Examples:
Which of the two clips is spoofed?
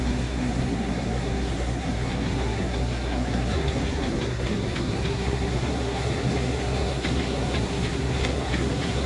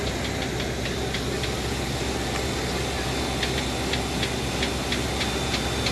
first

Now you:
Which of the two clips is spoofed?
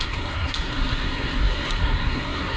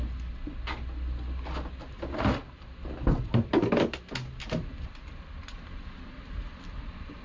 first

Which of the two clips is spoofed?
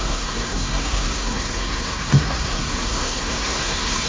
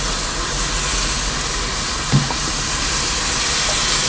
first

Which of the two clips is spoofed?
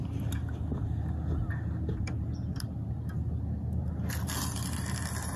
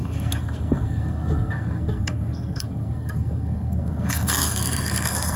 second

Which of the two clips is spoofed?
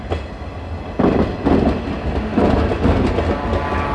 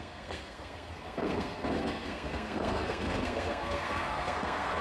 second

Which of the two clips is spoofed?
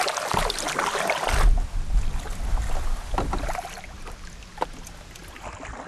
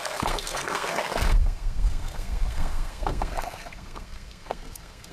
second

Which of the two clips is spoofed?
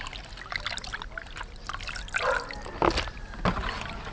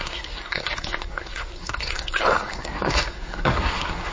second